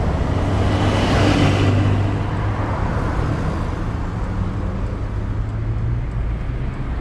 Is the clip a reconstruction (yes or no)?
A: no